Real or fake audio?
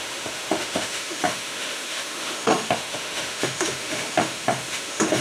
fake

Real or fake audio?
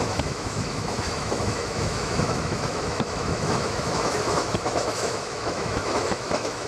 fake